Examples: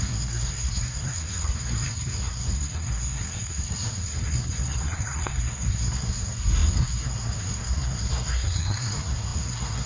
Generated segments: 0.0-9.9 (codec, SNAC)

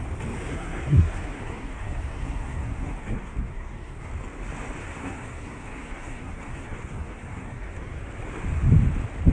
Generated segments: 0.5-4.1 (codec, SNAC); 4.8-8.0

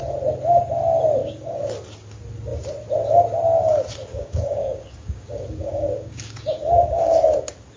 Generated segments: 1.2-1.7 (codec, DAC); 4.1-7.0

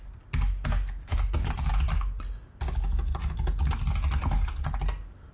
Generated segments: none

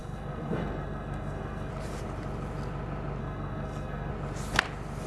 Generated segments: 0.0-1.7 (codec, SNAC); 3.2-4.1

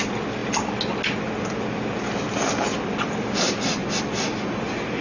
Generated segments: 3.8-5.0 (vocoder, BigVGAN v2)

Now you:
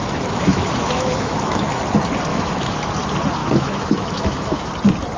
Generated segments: 0.0-1.8 (autoencoder, DAC-VAE); 2.3-2.9; 3.4-4.7